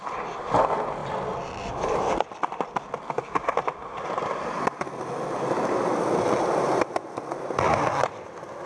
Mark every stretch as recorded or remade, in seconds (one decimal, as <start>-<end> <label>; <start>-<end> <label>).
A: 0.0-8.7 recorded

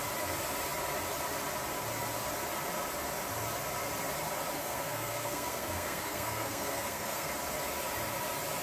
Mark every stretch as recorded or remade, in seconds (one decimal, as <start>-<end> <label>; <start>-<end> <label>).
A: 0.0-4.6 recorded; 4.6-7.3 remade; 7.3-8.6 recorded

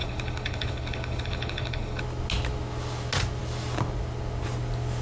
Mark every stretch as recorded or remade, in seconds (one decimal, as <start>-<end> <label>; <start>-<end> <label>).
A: 0.0-2.0 remade; 2.0-5.0 recorded

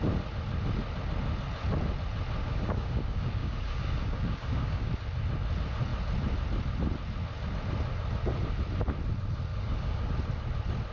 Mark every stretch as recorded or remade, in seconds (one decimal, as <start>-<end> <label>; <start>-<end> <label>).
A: 0.0-2.4 recorded; 2.4-4.9 remade; 4.9-9.5 recorded; 9.5-10.1 remade; 10.1-10.9 recorded

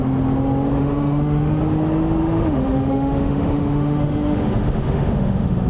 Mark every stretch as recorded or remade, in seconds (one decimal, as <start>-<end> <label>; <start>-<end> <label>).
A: 0.0-0.8 recorded; 0.8-1.6 remade; 1.6-2.2 recorded; 2.2-5.7 remade